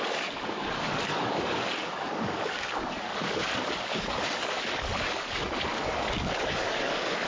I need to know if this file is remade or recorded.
remade